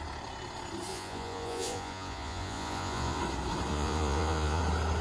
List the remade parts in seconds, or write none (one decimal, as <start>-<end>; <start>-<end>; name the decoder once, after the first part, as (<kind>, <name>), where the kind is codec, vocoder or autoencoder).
0.9-3.2 (vocoder, Vocos); 3.7-4.6

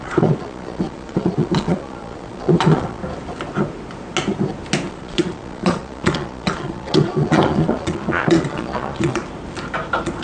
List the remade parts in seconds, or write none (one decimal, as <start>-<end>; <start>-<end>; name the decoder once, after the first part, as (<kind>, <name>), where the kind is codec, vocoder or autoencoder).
0.0-3.0 (vocoder, Vocos); 4.9-9.2